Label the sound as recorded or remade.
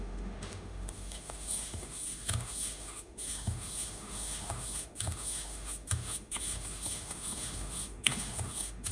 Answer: remade